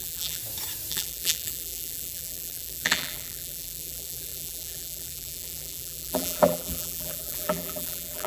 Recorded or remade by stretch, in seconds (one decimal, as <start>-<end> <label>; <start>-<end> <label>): 0.0-0.4 remade; 0.4-0.9 recorded; 0.9-8.3 remade